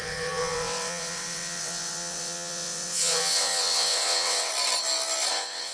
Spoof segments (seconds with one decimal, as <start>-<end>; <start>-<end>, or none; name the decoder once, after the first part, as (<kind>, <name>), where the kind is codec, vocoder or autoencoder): 0.0-4.5 (vocoder, WaveNeXt); 5.3-5.7